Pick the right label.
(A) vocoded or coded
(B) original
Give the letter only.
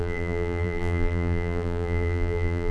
A